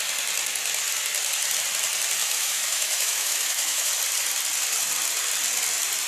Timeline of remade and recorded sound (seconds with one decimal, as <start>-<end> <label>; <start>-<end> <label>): 0.0-2.2 recorded; 2.2-3.9 remade; 3.9-6.1 recorded